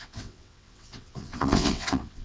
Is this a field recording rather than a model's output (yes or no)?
no